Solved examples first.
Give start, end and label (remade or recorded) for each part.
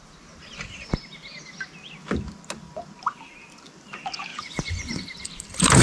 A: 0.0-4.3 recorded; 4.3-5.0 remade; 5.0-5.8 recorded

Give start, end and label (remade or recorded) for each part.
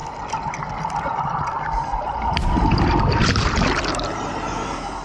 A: 0.0-5.0 recorded